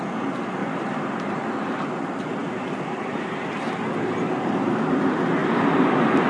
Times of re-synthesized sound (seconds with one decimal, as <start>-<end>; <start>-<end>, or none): 0.6-1.9; 2.4-3.3